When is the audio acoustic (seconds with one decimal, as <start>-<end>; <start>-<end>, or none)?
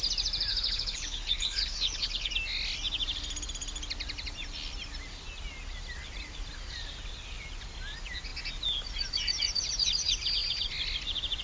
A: 0.0-0.5; 2.3-11.4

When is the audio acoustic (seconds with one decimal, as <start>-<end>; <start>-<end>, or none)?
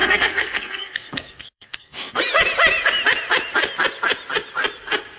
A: 2.2-5.2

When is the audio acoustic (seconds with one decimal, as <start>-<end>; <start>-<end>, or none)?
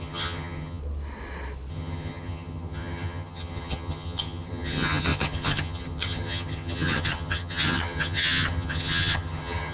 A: 0.8-1.7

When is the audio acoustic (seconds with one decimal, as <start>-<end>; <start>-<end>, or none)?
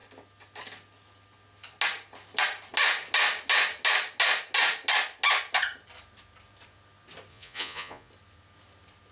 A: 0.0-7.3; 8.1-9.1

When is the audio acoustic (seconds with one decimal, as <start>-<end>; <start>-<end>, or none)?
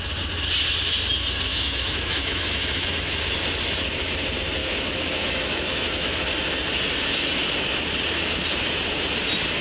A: 0.0-1.5; 3.1-4.6; 6.3-9.6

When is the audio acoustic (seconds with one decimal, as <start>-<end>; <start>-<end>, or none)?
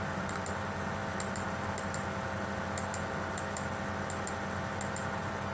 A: 0.0-5.5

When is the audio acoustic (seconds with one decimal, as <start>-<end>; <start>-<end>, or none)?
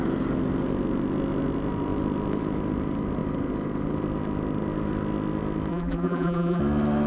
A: 0.0-5.7; 6.6-7.1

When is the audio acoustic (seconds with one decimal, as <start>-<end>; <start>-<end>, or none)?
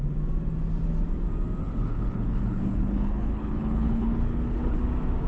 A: 0.0-1.6; 4.8-5.3